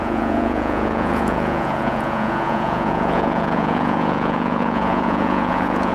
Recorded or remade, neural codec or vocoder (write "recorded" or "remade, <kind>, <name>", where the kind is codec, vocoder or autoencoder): remade, vocoder, Vocos